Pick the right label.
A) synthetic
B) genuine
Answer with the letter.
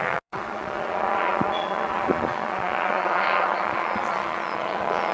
A